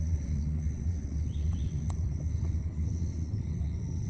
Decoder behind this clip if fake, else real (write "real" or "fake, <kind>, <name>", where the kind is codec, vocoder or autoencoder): fake, vocoder, WaveNeXt